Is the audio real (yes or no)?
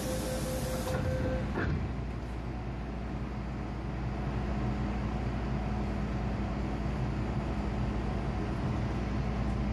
yes